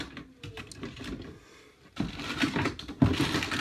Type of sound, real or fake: real